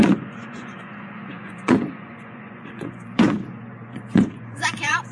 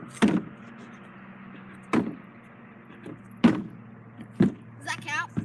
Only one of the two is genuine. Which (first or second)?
second